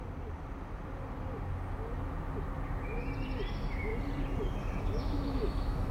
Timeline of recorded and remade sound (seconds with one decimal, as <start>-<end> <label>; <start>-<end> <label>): 0.0-3.5 recorded; 3.5-3.9 remade; 3.9-4.8 recorded; 4.8-5.9 remade